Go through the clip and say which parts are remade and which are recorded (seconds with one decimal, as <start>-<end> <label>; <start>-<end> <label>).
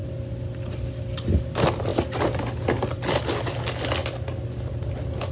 0.0-5.3 recorded